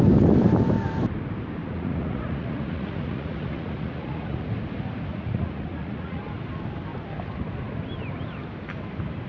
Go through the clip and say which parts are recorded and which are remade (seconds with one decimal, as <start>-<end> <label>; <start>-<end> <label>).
0.0-1.6 recorded; 1.6-4.5 remade; 4.5-5.1 recorded; 5.1-6.2 remade; 6.2-9.3 recorded